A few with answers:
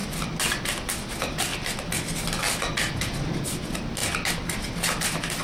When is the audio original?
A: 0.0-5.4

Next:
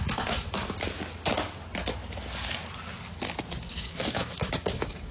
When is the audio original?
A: 0.6-3.7